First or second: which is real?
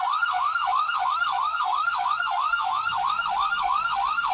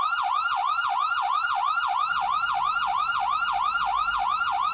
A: second